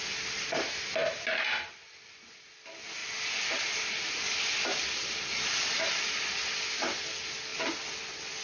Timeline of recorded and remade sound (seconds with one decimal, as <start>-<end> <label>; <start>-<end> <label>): 0.0-8.4 recorded